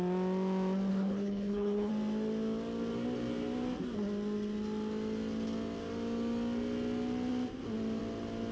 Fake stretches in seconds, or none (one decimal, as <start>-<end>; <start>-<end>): 0.9-1.9